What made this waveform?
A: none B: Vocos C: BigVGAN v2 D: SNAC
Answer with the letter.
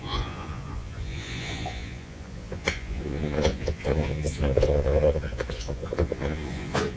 B